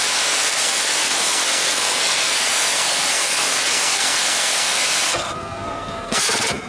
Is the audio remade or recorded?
remade